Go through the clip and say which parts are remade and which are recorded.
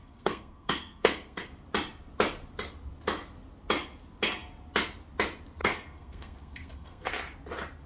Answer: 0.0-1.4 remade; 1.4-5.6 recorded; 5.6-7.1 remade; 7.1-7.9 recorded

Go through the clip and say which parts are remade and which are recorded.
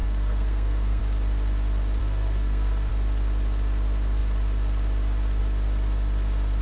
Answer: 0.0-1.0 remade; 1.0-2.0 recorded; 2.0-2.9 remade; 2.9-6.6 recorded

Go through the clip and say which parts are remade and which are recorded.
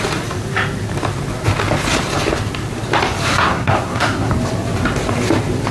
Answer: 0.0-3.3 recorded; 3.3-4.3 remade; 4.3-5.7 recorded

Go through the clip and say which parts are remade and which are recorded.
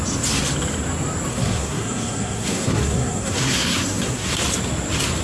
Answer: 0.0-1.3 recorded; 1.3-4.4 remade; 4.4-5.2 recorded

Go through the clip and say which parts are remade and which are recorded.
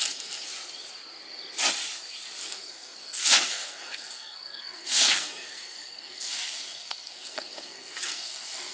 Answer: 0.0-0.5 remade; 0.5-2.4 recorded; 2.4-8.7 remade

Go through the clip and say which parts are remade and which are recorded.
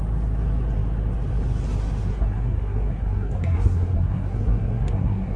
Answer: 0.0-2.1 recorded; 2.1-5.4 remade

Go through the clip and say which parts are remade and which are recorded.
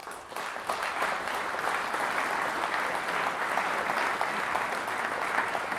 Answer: 0.0-5.8 recorded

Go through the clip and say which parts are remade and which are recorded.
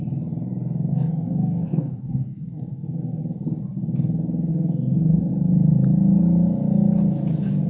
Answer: 0.0-0.9 recorded; 0.9-3.2 remade; 3.2-4.5 recorded; 4.5-5.3 remade; 5.3-7.7 recorded